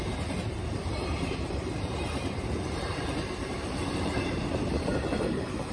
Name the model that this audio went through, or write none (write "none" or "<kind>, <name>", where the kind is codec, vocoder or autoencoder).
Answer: vocoder, BigVGAN v2